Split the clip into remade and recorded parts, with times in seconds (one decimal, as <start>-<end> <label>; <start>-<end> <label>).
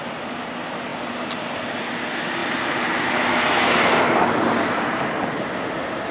0.0-6.1 recorded